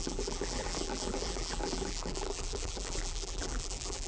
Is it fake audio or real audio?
fake